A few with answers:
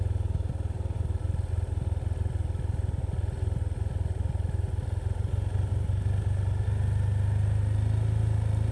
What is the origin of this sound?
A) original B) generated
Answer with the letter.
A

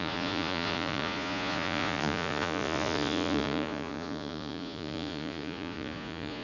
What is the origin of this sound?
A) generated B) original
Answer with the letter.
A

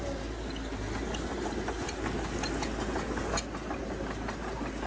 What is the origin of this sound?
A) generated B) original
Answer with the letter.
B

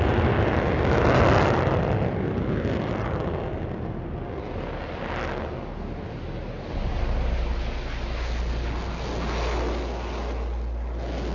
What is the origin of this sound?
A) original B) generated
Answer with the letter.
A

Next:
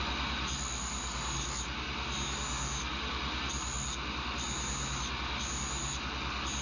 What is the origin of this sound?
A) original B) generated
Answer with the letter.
A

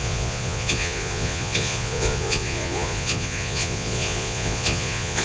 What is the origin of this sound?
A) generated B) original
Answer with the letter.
A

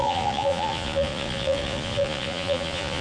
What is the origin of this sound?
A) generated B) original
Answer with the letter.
A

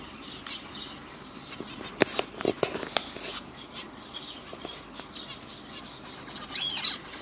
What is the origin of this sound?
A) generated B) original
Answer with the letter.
B